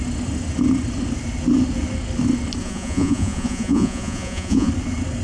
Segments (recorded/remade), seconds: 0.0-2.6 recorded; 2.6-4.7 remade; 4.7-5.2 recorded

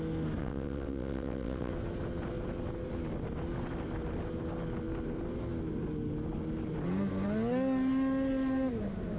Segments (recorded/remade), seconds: 0.0-0.4 recorded; 0.4-1.7 remade; 1.7-9.2 recorded

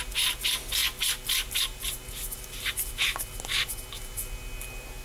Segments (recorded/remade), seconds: 0.0-5.0 recorded